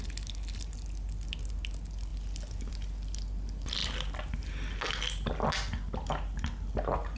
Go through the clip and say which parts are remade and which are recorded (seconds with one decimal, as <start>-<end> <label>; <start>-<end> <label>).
0.0-7.2 recorded